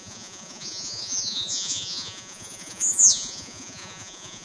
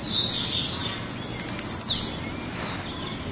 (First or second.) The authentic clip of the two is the second